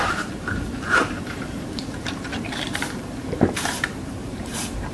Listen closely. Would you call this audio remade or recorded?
remade